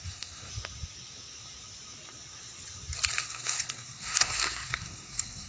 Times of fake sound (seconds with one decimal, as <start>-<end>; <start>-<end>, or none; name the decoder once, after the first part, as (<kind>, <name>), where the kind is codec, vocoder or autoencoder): 0.0-0.5 (codec, SNAC); 3.2-5.5